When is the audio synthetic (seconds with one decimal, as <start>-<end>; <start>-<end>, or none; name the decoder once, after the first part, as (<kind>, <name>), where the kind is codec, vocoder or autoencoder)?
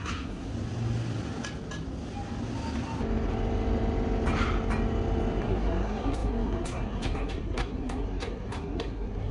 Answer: 0.0-0.5 (codec, SNAC); 5.4-9.3